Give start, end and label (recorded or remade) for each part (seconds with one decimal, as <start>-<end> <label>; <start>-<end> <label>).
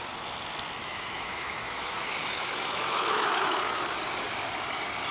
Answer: 0.0-0.8 recorded; 0.8-3.8 remade; 3.8-5.1 recorded